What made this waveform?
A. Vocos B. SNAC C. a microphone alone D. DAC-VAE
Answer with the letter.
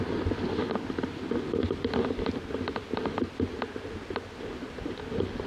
C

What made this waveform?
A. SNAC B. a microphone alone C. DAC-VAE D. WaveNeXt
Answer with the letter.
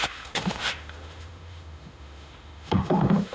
C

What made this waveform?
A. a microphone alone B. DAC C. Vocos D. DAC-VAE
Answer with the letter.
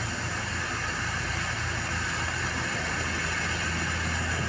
A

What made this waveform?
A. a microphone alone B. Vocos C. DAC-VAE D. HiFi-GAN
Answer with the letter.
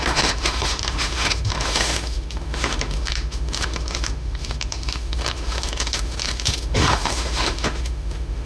C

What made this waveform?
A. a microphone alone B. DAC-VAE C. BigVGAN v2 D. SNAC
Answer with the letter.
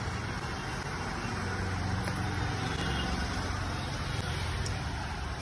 A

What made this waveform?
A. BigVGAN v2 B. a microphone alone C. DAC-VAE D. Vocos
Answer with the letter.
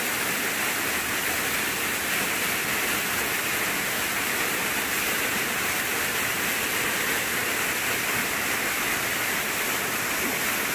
B